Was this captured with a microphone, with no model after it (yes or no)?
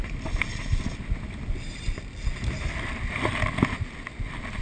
yes